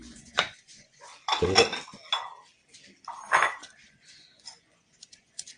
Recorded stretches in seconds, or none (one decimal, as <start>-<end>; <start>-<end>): 1.1-3.3